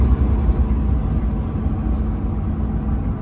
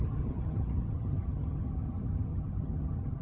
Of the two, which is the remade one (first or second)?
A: second